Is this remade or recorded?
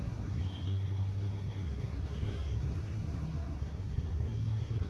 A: remade